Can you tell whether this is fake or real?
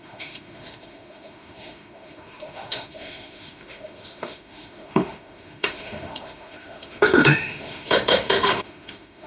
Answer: fake